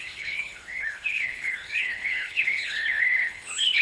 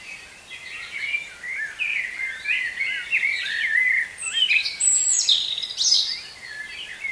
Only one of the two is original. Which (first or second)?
second